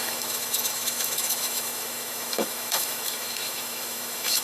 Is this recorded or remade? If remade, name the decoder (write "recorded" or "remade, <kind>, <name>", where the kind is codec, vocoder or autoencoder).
remade, autoencoder, DAC-VAE